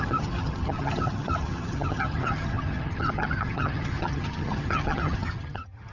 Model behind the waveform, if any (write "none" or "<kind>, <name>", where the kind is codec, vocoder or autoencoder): vocoder, HiFi-GAN